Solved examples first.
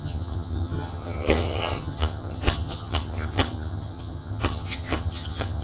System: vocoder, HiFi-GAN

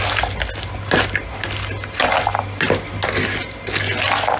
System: none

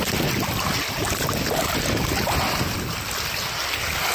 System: none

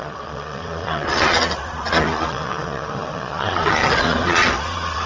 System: vocoder, Vocos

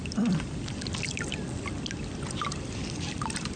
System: vocoder, BigVGAN v2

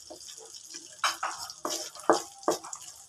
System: none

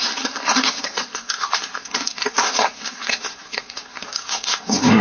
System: codec, SNAC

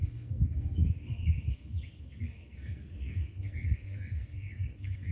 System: codec, SNAC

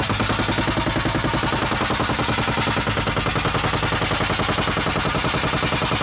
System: none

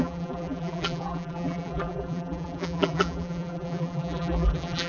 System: vocoder, BigVGAN v2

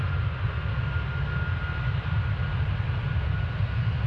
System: none